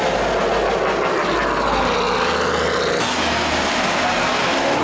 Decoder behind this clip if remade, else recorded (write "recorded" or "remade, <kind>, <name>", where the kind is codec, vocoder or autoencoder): recorded